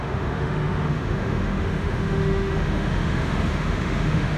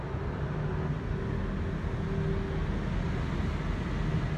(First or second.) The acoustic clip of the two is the second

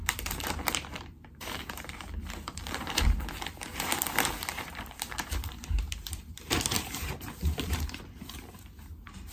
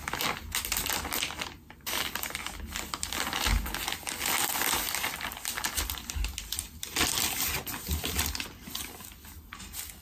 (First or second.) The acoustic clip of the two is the second